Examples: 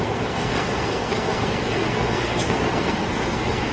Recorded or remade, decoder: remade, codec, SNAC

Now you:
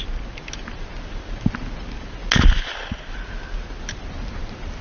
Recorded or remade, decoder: recorded